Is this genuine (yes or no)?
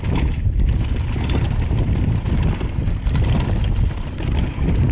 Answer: yes